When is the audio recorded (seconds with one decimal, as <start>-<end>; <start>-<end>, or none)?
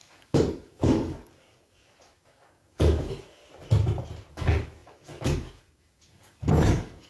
3.4-4.3